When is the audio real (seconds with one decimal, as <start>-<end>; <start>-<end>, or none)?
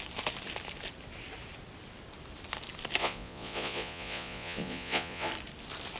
0.0-3.0; 5.3-6.0